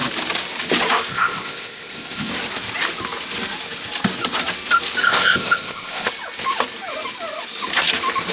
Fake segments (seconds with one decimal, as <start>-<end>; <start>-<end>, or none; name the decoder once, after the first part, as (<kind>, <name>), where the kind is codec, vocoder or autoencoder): 1.1-2.3 (codec, ZipCodec); 5.0-6.1